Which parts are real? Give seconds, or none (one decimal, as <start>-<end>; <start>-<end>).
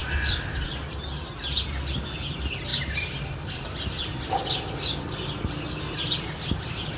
0.0-7.0